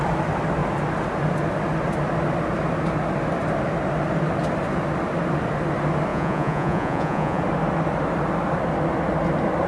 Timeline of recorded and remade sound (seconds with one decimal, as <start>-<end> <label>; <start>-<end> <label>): 0.0-6.1 recorded; 6.1-7.4 remade; 7.4-9.7 recorded